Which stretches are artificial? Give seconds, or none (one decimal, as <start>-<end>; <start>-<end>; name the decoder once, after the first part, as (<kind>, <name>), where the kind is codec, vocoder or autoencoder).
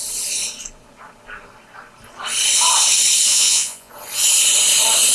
3.3-3.9 (vocoder, Vocos)